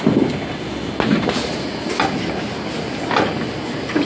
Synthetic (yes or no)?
no